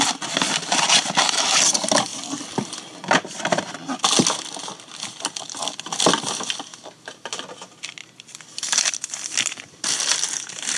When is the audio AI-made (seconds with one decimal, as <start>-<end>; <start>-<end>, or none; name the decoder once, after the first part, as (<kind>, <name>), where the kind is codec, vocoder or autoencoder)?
8.0-9.8 (vocoder, BigVGAN v2)